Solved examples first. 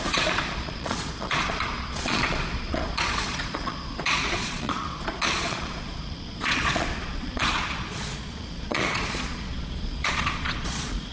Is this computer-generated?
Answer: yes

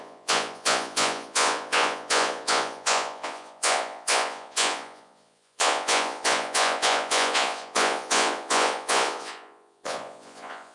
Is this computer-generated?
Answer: yes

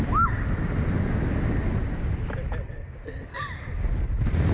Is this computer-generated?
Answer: no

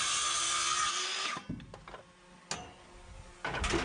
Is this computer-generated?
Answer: no